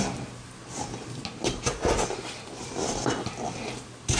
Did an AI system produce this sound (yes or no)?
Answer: no